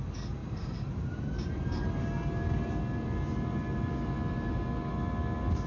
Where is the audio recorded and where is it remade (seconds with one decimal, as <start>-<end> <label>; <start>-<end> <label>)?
0.0-0.4 recorded; 0.4-1.3 remade; 1.3-5.7 recorded